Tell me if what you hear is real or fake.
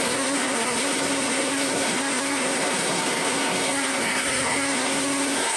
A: fake